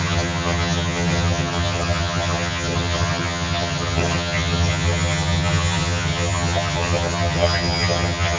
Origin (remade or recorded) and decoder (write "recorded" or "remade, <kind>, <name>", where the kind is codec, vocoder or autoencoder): remade, vocoder, HiFi-GAN